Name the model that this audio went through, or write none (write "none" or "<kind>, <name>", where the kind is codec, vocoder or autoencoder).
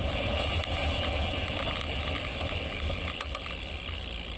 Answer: none